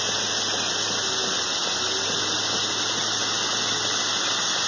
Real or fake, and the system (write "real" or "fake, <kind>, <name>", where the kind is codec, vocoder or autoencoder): real